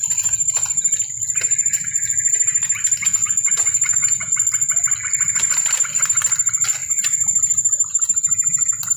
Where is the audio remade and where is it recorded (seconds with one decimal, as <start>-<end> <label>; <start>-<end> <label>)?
0.0-3.2 recorded; 3.2-4.3 remade; 4.3-9.0 recorded

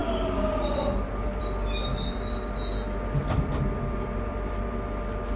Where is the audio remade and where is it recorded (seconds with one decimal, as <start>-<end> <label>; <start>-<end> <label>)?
0.0-1.4 remade; 1.4-3.2 recorded; 3.2-4.7 remade; 4.7-5.4 recorded

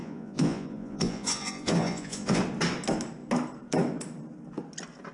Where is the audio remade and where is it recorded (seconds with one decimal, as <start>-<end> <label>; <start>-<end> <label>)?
0.0-2.4 remade; 2.4-5.1 recorded

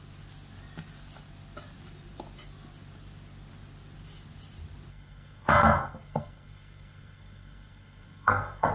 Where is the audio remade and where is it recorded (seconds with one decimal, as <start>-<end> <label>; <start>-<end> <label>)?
0.0-4.9 recorded; 4.9-8.7 remade

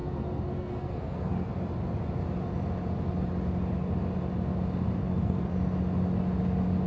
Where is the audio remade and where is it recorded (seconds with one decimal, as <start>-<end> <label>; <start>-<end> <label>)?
0.0-1.5 remade; 1.5-5.0 recorded; 5.0-5.5 remade; 5.5-6.9 recorded